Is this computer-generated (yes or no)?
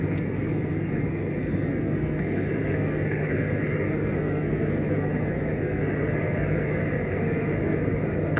yes